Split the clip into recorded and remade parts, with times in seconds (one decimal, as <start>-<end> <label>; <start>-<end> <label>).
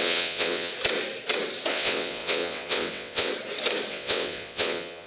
0.0-0.7 remade; 0.7-1.7 recorded; 1.7-3.3 remade; 3.3-3.9 recorded; 3.9-5.1 remade